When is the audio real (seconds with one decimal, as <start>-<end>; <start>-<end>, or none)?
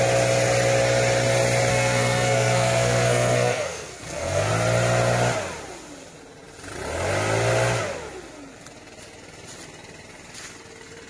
0.0-1.7; 4.5-11.1